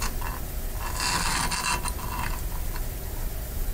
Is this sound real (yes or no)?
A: yes